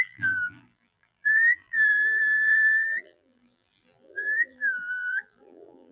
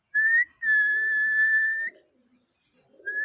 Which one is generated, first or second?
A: first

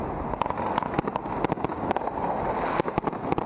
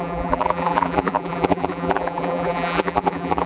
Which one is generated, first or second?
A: second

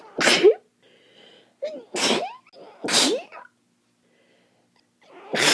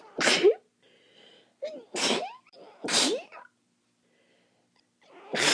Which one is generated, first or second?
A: second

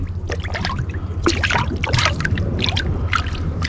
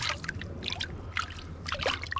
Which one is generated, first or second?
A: first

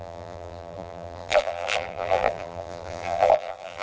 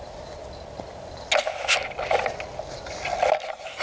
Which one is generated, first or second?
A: first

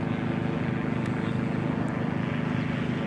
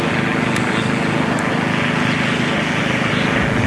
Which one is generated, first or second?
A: second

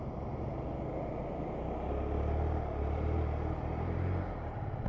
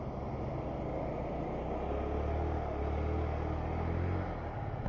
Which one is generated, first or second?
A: first